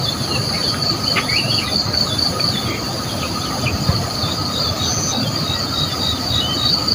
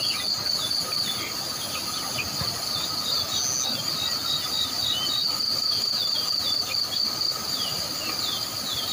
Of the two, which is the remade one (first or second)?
first